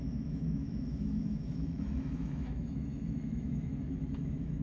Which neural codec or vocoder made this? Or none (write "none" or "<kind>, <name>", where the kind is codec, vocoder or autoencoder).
autoencoder, DAC-VAE